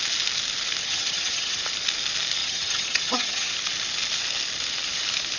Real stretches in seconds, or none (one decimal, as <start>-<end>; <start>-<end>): 0.0-0.8; 1.6-2.4; 3.5-5.4